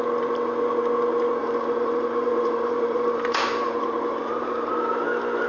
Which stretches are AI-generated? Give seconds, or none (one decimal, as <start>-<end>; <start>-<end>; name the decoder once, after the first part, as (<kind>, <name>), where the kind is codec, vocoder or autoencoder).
1.4-4.7 (vocoder, BigVGAN v2)